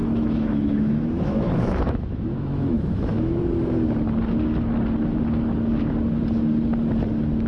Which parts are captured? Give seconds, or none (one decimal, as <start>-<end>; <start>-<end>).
3.4-7.5